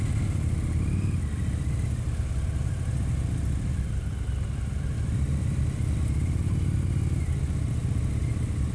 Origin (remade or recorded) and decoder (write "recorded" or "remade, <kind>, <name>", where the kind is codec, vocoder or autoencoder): recorded